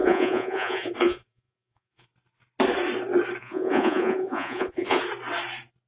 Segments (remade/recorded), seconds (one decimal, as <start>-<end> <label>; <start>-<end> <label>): 0.0-2.1 remade; 2.1-3.4 recorded; 3.4-5.0 remade; 5.0-5.9 recorded